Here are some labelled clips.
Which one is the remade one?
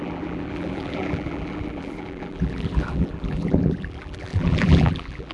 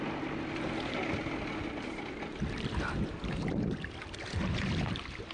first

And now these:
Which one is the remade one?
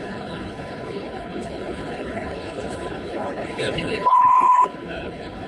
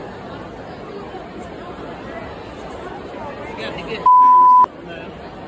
first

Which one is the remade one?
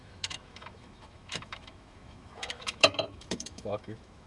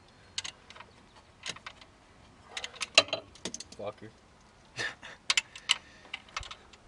first